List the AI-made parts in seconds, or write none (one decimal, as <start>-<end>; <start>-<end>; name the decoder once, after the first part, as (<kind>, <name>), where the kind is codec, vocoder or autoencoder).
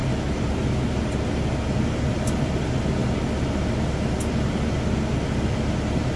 none